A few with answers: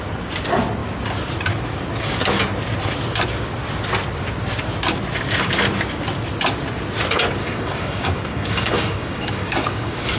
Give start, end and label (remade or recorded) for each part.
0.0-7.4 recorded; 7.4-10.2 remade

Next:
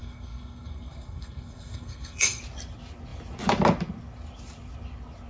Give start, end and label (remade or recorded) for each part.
0.0-2.4 remade; 2.4-5.3 recorded

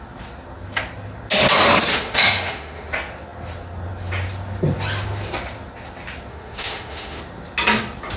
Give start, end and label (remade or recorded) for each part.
0.0-1.9 recorded; 1.9-2.9 remade; 2.9-6.3 recorded; 6.3-7.2 remade; 7.2-8.2 recorded